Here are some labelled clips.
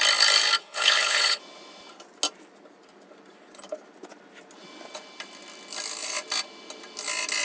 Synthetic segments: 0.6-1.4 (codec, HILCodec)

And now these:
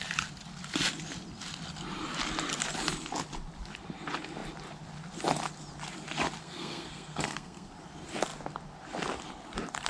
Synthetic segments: 6.4-7.7 (codec, SNAC)

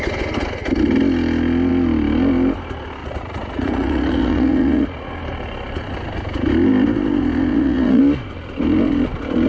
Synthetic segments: 3.0-5.1 (vocoder, Vocos); 7.5-8.0

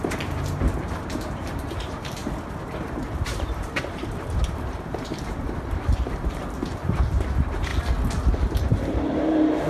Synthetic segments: 0.0-2.2 (vocoder, BigVGAN v2); 3.1-7.7; 8.6-9.7

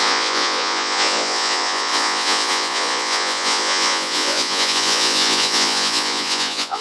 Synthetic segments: 0.0-6.8 (vocoder, Vocos)